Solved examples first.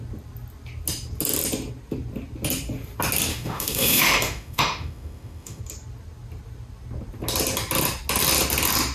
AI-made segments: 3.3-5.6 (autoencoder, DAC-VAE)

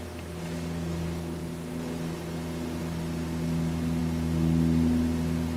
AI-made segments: none

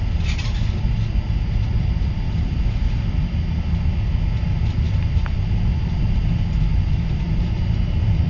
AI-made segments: none

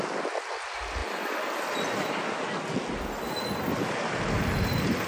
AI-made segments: none